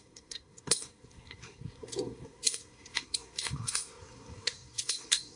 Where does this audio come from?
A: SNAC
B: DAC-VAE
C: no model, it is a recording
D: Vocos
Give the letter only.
A